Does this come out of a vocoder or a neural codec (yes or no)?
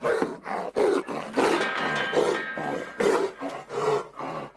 no